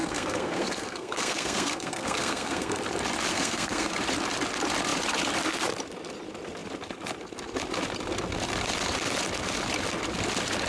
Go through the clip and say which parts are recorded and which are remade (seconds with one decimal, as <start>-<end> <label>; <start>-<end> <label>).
0.0-2.8 remade; 2.8-3.3 recorded; 3.3-3.9 remade; 3.9-10.7 recorded